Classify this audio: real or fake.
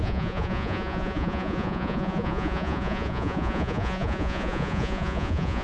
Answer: fake